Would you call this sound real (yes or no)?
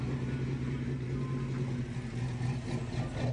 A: yes